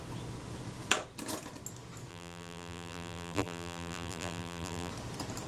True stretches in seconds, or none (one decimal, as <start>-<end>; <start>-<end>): 0.0-2.1; 4.9-5.5